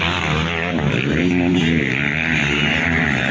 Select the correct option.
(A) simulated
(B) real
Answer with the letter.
B